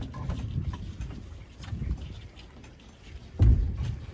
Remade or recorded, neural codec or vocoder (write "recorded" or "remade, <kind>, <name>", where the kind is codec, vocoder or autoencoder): recorded